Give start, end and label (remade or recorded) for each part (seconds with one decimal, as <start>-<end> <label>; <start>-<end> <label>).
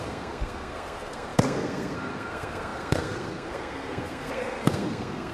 0.0-5.3 remade